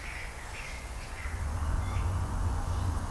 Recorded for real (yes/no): no